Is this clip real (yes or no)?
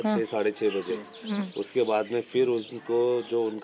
yes